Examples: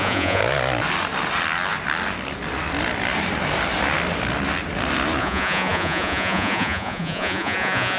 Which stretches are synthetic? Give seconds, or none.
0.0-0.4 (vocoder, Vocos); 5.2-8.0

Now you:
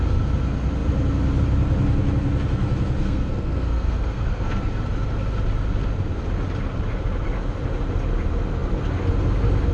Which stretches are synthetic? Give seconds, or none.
3.0-4.6 (codec, SNAC)

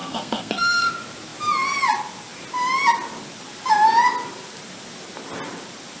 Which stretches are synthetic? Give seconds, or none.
0.0-0.9 (codec, SNAC)